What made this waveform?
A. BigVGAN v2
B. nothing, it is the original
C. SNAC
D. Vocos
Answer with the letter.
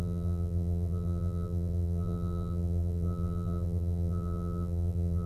A